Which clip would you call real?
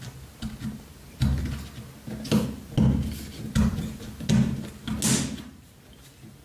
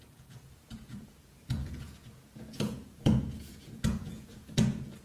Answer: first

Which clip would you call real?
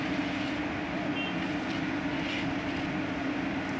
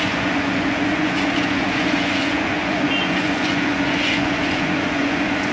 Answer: first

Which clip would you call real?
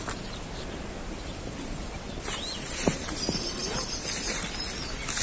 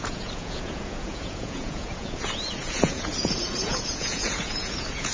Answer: first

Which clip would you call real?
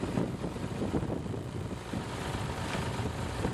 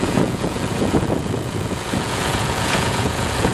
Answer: first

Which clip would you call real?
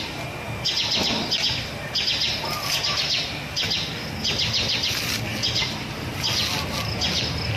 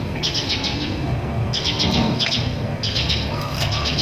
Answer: first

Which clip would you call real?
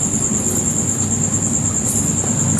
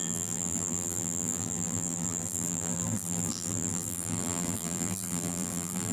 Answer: first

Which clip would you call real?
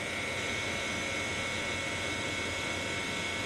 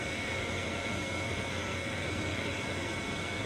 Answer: first